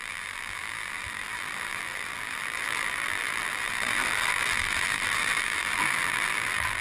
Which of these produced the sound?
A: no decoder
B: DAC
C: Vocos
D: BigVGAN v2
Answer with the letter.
D